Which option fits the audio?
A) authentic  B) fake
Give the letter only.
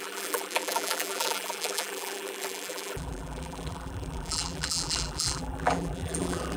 B